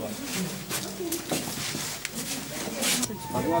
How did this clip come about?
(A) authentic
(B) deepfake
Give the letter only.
A